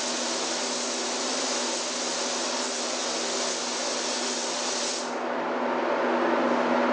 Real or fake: real